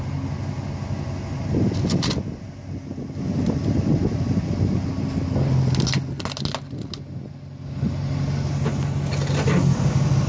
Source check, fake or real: real